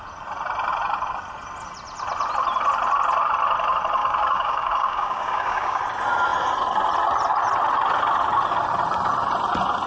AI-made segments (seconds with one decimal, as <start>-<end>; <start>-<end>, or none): 4.0-5.8